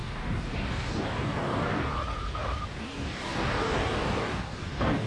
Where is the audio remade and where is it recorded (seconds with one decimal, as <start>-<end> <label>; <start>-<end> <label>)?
0.0-1.9 remade; 1.9-2.8 recorded; 2.8-5.1 remade